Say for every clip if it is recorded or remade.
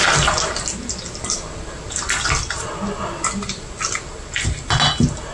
recorded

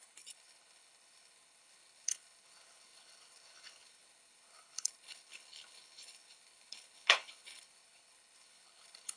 remade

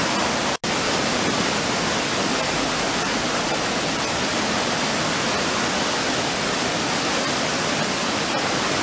recorded